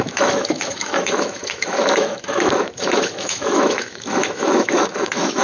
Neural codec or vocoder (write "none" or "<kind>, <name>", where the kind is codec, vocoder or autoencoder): autoencoder, DAC-VAE